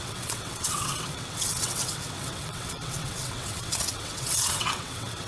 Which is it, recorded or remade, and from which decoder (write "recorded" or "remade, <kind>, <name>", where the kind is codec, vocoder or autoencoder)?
remade, vocoder, WaveNeXt